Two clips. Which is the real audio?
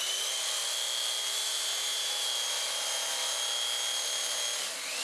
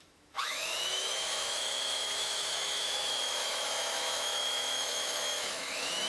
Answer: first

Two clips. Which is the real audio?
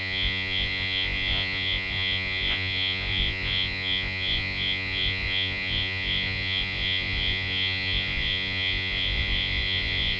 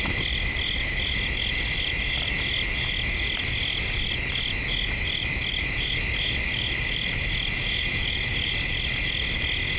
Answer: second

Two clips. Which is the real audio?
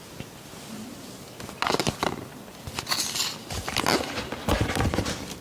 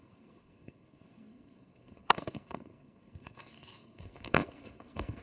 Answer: first